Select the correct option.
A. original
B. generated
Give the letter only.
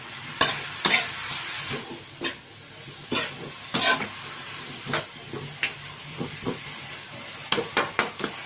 A